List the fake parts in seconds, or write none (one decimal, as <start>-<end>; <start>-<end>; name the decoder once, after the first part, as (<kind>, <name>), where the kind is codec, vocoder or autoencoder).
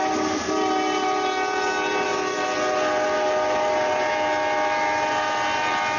none